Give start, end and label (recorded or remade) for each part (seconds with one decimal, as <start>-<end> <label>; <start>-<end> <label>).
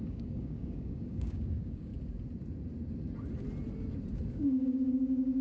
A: 0.0-1.9 remade; 1.9-4.3 recorded; 4.3-5.4 remade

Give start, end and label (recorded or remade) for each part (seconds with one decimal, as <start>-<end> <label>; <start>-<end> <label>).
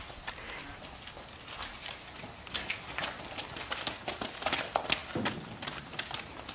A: 0.0-6.5 recorded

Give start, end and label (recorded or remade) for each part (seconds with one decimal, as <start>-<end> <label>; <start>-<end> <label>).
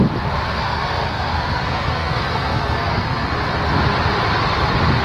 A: 0.0-0.4 recorded; 0.4-3.3 remade; 3.3-5.0 recorded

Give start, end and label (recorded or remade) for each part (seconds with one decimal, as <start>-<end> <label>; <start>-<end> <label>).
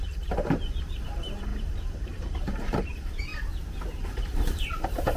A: 0.0-3.3 remade; 3.3-4.0 recorded; 4.0-5.2 remade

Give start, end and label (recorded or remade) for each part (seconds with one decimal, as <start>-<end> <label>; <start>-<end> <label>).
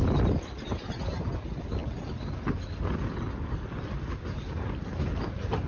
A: 0.0-5.7 recorded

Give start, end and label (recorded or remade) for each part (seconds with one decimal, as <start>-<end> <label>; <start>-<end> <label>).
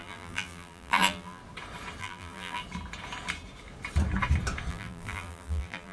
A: 0.0-1.4 remade; 1.4-2.0 recorded; 2.0-2.6 remade; 2.6-4.7 recorded; 4.7-5.9 remade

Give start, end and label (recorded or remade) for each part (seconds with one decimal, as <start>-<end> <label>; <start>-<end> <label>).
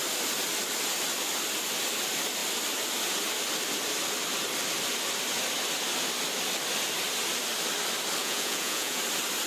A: 0.0-8.2 recorded; 8.2-9.0 remade; 9.0-9.5 recorded